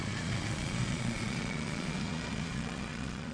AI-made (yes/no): yes